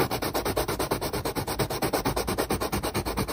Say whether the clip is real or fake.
real